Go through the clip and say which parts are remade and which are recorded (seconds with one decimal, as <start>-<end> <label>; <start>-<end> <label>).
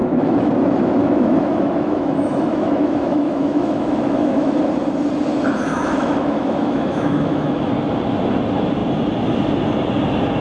0.0-0.5 remade; 0.5-1.0 recorded; 1.0-4.6 remade; 4.6-5.7 recorded; 5.7-7.7 remade; 7.7-10.4 recorded